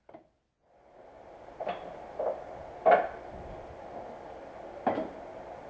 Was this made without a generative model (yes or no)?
yes